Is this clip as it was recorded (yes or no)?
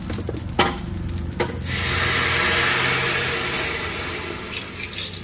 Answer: yes